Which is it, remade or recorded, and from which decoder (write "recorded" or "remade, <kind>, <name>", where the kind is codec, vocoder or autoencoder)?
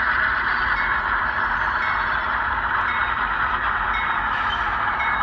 remade, vocoder, BigVGAN v2